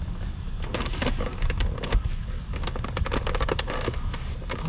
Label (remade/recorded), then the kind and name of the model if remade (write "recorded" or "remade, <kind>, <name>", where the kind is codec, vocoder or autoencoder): remade, codec, DAC